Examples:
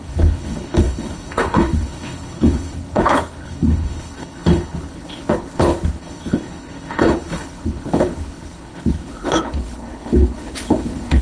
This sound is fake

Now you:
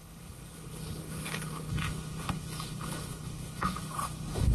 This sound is fake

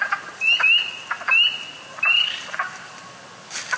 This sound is real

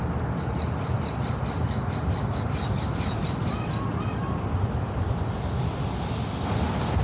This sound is real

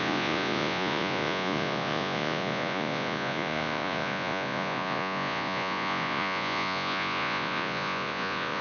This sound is fake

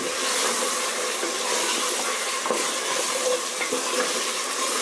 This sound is real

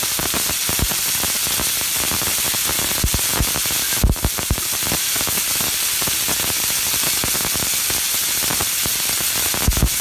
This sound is real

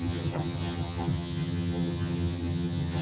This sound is fake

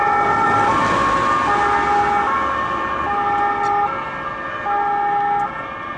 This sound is real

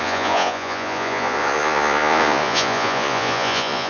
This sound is fake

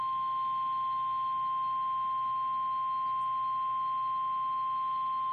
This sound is real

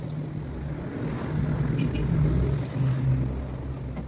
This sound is real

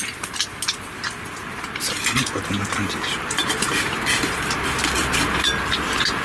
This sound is real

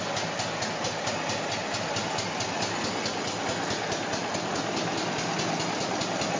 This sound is real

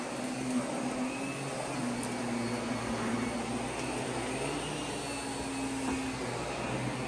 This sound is real